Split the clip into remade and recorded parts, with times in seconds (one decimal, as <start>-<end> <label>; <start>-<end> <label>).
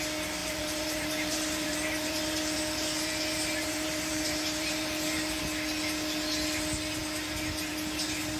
0.0-0.4 recorded; 0.4-5.4 remade; 5.4-8.4 recorded